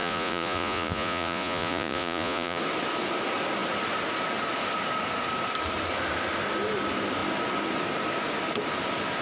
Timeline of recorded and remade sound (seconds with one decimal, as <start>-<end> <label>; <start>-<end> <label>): 0.0-2.6 remade; 2.6-9.2 recorded

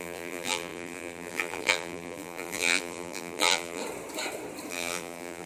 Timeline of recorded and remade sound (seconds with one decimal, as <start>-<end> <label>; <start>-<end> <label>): 0.0-3.8 remade; 3.8-4.7 recorded; 4.7-5.5 remade

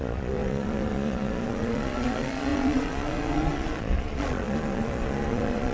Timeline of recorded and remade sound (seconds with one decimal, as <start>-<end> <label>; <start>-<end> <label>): 0.0-5.7 remade